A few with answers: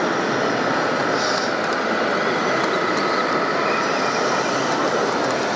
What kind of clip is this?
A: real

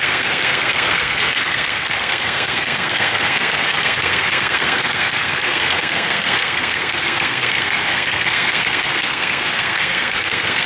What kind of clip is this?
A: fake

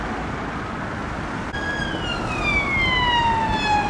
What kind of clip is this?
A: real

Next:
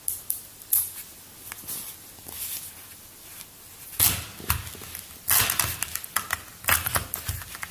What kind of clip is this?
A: real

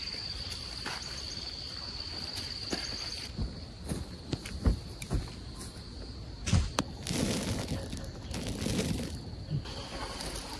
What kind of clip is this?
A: real